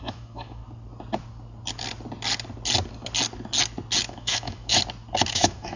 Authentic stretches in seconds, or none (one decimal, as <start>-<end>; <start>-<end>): 0.6-4.1; 4.7-5.3

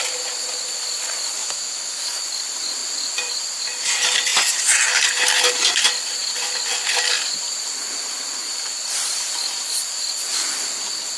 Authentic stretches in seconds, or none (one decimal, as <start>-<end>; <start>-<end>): 0.0-1.4; 2.0-11.2

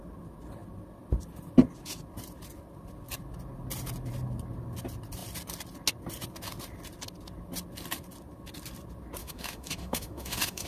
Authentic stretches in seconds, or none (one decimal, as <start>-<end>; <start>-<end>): 0.0-9.2

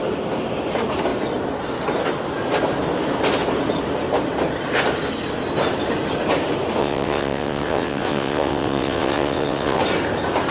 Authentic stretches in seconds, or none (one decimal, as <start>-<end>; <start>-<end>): 0.0-6.8; 9.8-10.5

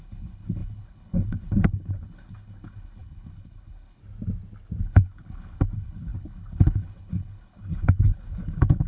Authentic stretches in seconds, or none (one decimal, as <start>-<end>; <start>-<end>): 4.0-4.8

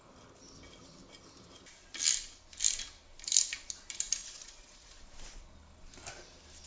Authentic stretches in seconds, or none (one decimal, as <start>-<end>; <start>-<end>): 0.0-4.2; 5.0-6.7